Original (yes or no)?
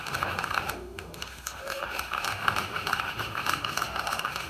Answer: no